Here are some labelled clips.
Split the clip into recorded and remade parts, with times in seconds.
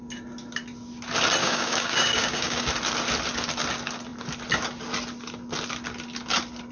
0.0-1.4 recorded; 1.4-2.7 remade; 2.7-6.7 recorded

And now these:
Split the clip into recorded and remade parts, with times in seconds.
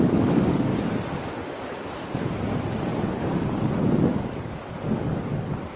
0.0-0.7 remade; 0.7-4.0 recorded; 4.0-5.8 remade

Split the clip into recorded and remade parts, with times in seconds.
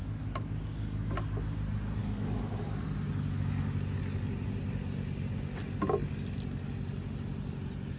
0.0-1.2 remade; 1.2-2.0 recorded; 2.0-2.6 remade; 2.6-8.0 recorded